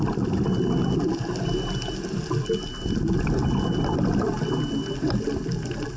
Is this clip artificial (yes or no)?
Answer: no